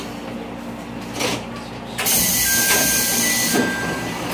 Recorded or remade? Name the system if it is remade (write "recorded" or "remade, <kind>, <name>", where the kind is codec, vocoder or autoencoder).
recorded